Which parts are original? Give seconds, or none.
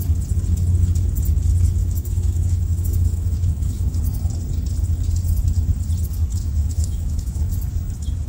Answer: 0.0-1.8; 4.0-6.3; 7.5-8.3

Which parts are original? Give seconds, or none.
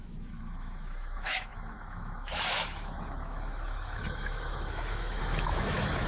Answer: none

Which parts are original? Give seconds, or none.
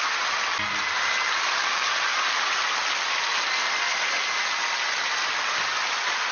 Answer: 0.0-6.3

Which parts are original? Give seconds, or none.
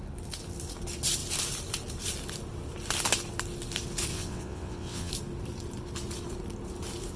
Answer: 0.0-4.1; 5.1-7.2